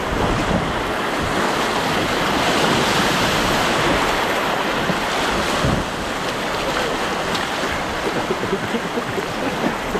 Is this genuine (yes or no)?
yes